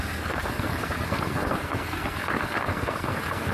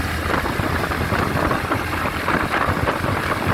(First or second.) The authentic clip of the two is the second